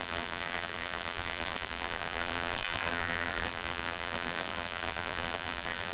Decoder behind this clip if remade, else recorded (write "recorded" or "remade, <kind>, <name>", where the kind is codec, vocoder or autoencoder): remade, vocoder, BigVGAN v2